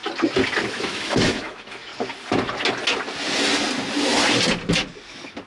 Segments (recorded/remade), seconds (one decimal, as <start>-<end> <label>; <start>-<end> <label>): 0.0-0.7 recorded; 0.7-1.9 remade; 1.9-5.5 recorded